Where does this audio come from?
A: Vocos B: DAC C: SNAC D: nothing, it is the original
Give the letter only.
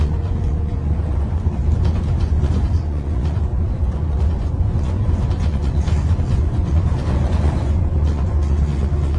A